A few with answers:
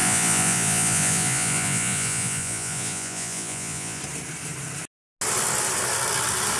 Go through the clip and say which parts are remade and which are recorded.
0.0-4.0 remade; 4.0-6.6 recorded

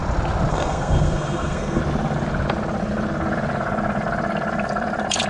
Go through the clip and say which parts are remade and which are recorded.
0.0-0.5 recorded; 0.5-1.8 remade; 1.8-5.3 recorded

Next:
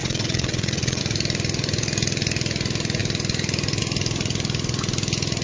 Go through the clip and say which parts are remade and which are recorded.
0.0-1.0 remade; 1.0-5.4 recorded

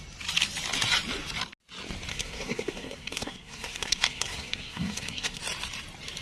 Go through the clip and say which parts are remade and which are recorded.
0.0-2.1 recorded; 2.1-5.4 remade; 5.4-6.2 recorded

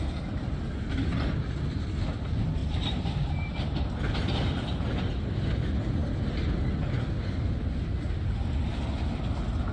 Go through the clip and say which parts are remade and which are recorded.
0.0-2.6 recorded; 2.6-3.6 remade; 3.6-9.7 recorded